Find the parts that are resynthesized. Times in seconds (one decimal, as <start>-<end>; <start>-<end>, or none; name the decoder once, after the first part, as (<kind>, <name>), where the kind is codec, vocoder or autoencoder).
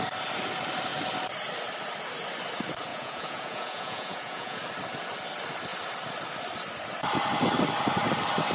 2.9-4.6 (vocoder, Vocos)